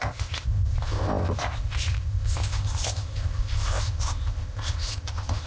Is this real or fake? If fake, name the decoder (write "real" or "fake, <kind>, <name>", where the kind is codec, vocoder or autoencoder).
fake, codec, ZipCodec